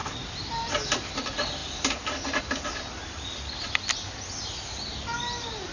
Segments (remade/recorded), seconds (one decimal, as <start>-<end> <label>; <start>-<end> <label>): 0.0-5.7 recorded

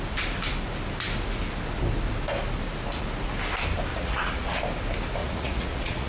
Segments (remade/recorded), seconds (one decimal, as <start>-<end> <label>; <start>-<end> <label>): 0.0-3.9 recorded; 3.9-4.6 remade; 4.6-5.2 recorded; 5.2-6.1 remade